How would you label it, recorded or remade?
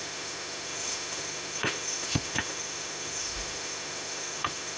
remade